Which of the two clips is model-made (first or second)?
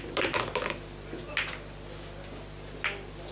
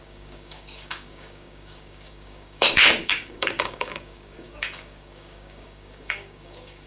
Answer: second